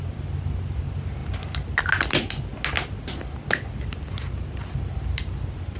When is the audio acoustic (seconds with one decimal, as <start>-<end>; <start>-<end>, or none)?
0.0-5.8

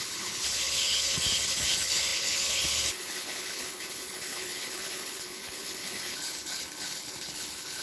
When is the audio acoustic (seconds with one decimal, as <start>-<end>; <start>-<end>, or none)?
none

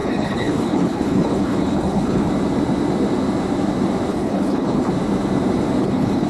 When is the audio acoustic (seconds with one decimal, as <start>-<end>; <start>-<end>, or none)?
2.3-4.1; 4.9-5.8

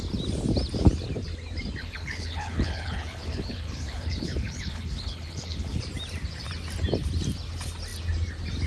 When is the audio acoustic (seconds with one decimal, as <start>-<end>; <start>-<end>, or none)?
0.0-1.8; 5.8-8.7

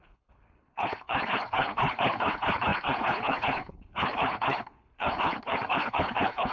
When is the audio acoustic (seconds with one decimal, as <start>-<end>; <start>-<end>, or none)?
none

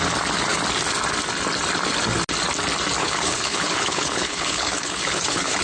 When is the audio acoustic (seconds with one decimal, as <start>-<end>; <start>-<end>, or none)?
0.0-3.0

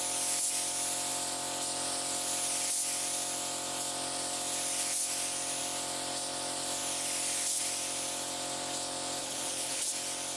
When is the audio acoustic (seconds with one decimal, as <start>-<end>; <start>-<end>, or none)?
0.0-9.2; 9.9-10.4